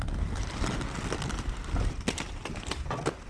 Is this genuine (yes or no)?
yes